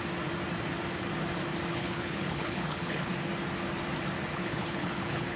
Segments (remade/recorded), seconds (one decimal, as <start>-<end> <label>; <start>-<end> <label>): 0.0-1.7 recorded; 1.7-3.1 remade; 3.1-4.3 recorded; 4.3-5.4 remade